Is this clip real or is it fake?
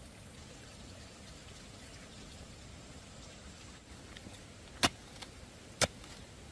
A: real